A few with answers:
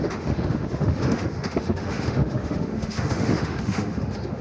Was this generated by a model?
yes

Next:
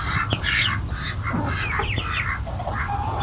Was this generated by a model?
no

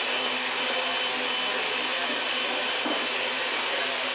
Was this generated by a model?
no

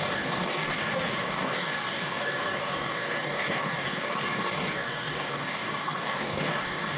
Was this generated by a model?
yes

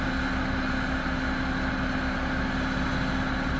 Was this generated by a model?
no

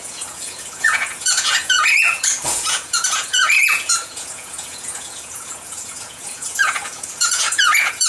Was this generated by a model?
yes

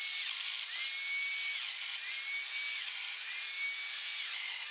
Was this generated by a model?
no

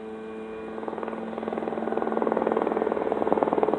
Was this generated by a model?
no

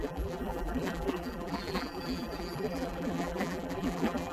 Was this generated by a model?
yes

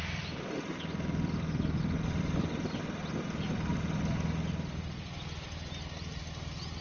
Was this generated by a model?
no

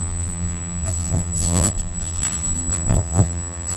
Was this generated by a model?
yes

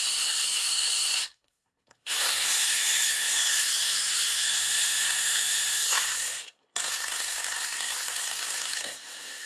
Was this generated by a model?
yes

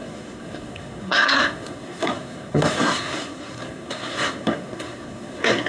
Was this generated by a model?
yes